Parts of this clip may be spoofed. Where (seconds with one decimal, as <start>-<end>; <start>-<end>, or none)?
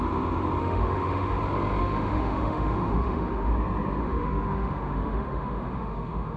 0.6-1.4; 1.8-3.5; 4.0-6.4